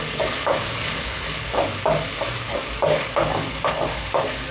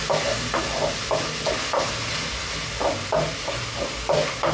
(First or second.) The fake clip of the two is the first